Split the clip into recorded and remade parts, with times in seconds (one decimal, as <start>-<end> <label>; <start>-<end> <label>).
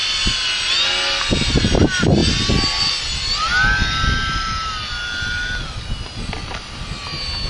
0.0-7.5 recorded